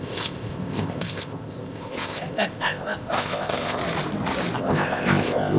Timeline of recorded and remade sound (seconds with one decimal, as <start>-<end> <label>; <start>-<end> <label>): 0.0-3.8 remade; 3.8-4.6 recorded; 4.6-5.6 remade